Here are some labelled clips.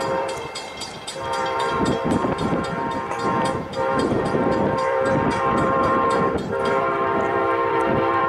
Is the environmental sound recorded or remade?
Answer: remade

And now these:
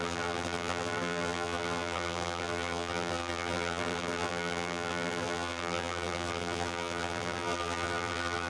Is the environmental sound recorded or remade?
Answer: remade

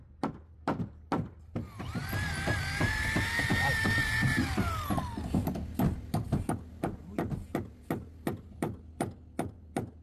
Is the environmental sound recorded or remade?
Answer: recorded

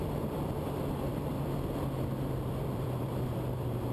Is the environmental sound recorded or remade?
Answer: remade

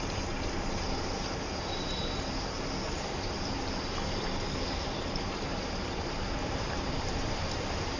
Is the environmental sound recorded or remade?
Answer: remade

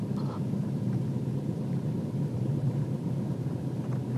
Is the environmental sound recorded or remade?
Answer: remade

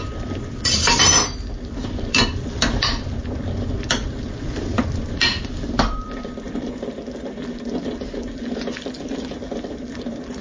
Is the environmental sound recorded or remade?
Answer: remade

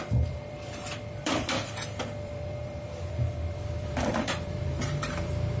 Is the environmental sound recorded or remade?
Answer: remade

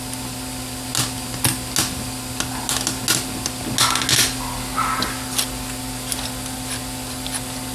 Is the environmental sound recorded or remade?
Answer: recorded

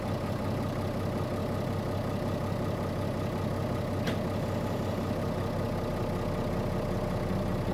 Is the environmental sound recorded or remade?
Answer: recorded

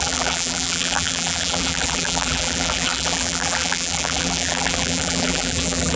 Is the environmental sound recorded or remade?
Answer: remade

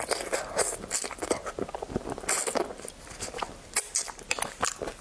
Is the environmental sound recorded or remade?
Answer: recorded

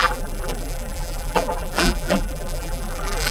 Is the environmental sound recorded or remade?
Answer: remade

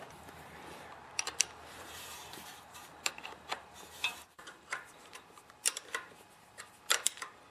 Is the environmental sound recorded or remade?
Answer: remade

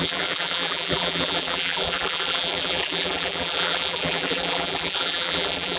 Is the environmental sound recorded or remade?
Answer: remade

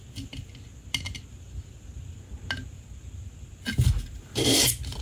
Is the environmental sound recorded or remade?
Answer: recorded